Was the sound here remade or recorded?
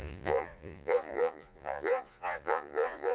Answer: remade